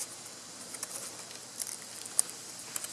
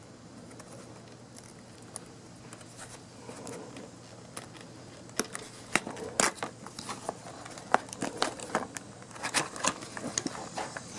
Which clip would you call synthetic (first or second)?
first